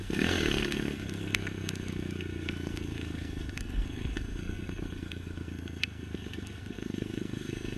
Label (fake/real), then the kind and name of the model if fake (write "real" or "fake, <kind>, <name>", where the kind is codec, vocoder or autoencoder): fake, codec, SNAC